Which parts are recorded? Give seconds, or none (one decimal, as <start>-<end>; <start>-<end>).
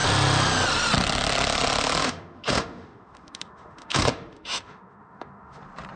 0.0-2.0; 5.6-6.0